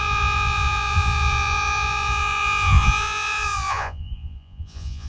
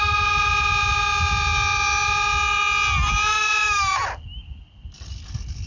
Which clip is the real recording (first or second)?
second